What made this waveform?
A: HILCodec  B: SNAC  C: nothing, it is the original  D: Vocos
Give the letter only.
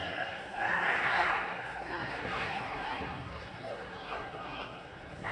B